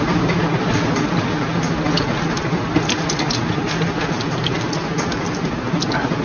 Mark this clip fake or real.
real